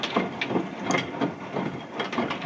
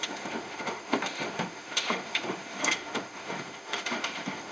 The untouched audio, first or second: first